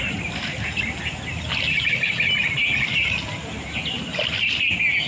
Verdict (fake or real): real